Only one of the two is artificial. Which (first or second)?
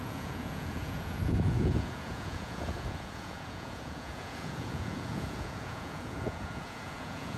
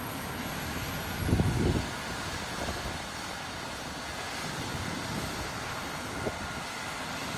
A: first